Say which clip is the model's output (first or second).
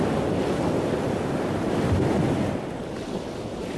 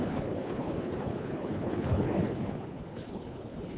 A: second